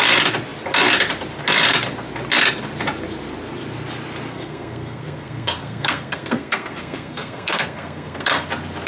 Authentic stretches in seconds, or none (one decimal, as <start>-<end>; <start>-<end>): 0.0-4.3; 8.5-8.9

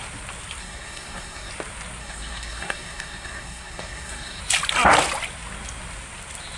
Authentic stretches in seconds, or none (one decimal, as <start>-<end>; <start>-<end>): 0.0-0.6; 1.5-2.0; 4.4-6.6

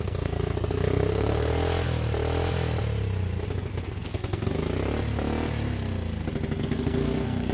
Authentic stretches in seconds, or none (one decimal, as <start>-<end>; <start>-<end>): 1.5-3.8; 4.6-6.6

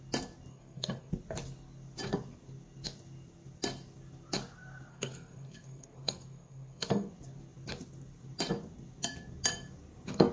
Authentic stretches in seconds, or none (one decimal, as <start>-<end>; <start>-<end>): 0.0-0.5; 1.1-4.9; 7.1-10.3

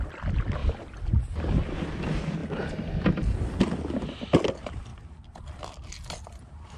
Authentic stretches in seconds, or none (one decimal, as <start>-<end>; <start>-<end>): 0.0-6.8

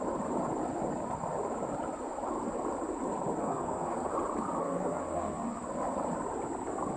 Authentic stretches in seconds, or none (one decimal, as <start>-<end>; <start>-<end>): 0.0-3.4; 4.1-4.6; 5.6-7.0

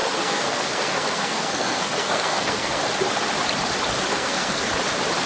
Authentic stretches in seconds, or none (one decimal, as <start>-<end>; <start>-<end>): 2.8-4.1; 4.7-5.3